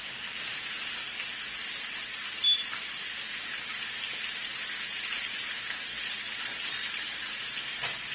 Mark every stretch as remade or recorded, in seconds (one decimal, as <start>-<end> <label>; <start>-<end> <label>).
0.0-1.0 remade; 1.0-3.3 recorded; 3.3-8.1 remade